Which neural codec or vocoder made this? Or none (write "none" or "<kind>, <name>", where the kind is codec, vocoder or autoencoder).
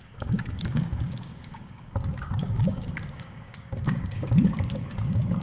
codec, DAC